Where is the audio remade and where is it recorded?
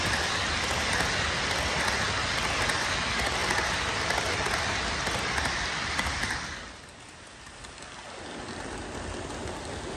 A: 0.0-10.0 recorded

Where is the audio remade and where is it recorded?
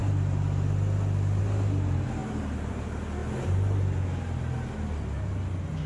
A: 0.0-5.9 recorded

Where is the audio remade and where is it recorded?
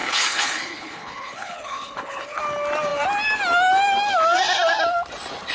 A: 0.0-2.4 remade; 2.4-5.5 recorded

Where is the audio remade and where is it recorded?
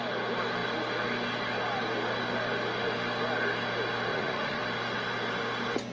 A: 0.0-4.1 recorded; 4.1-4.6 remade; 4.6-5.9 recorded